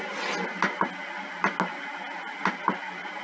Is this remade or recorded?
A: recorded